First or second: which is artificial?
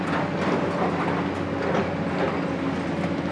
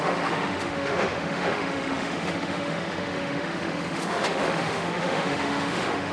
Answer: second